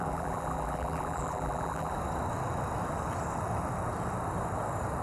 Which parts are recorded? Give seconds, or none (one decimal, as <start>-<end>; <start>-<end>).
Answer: 1.9-5.0